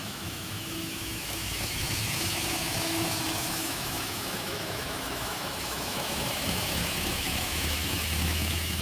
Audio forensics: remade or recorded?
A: remade